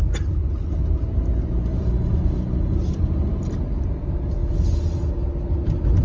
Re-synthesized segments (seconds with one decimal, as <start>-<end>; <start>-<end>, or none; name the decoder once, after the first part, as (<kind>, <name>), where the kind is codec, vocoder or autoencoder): 1.7-3.6 (vocoder, BigVGAN v2); 4.4-5.1